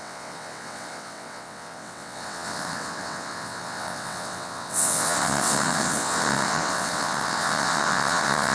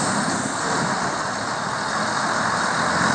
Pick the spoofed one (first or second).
first